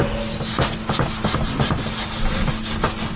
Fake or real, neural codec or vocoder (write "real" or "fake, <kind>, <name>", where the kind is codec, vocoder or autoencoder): real